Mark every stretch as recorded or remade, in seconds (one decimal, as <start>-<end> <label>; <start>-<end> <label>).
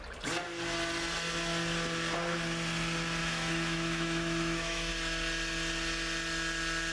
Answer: 0.0-3.2 recorded; 3.2-4.9 remade; 4.9-6.9 recorded